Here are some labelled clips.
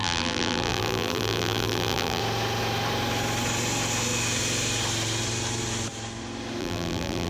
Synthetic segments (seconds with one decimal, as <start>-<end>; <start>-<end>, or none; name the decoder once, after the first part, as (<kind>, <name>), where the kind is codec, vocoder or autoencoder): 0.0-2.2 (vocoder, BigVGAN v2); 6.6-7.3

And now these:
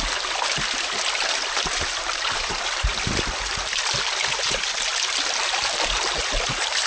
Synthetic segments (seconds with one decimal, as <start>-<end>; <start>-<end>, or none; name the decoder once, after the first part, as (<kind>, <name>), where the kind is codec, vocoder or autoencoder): none

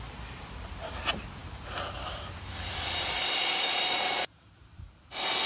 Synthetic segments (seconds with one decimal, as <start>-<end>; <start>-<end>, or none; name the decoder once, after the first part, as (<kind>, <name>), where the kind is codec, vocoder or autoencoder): 0.0-5.5 (vocoder, BigVGAN v2)

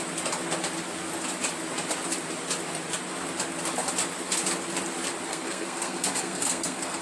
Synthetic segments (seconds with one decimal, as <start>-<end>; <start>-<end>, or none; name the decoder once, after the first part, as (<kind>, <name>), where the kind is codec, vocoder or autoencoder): 5.3-7.0 (codec, SNAC)

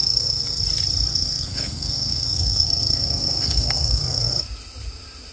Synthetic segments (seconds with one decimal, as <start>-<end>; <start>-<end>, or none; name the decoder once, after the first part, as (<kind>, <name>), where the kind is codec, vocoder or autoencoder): 0.0-0.6 (codec, SNAC); 1.1-4.3

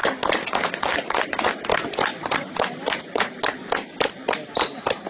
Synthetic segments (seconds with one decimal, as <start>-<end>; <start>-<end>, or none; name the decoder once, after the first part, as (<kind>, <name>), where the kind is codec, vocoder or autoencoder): 0.4-1.5 (vocoder, Vocos)